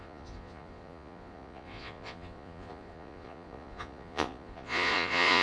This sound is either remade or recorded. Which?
remade